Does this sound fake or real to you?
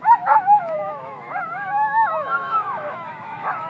fake